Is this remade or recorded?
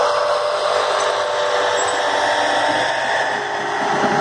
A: recorded